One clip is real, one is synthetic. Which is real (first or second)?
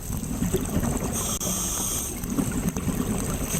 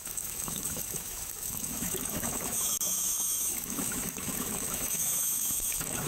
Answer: first